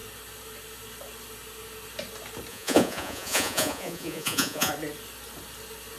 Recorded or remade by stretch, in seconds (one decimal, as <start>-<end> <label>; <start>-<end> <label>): 0.0-2.5 recorded; 2.5-4.7 remade; 4.7-6.0 recorded